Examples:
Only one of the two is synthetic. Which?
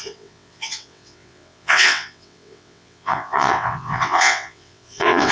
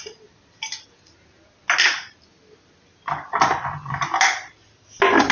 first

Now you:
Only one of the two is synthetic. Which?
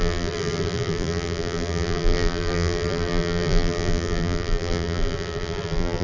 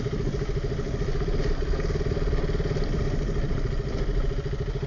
first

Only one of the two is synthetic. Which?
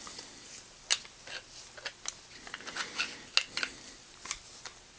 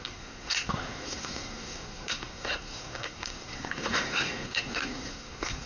second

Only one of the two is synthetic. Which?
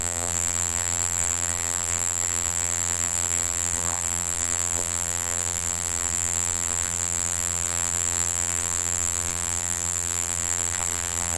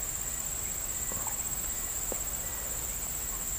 first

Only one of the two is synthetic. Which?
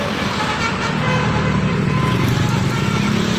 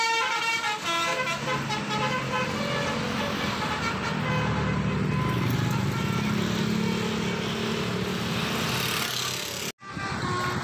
first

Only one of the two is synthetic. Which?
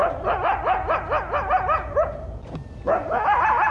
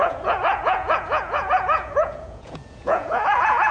second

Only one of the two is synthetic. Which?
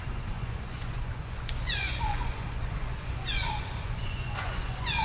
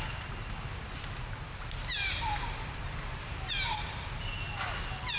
first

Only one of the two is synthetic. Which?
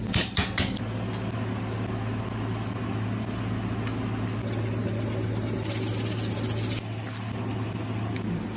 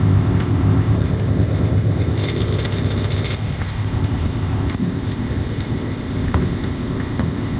second